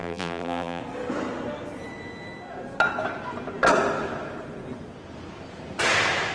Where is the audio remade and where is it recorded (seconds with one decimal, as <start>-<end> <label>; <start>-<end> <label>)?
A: 0.0-0.8 remade; 0.8-6.3 recorded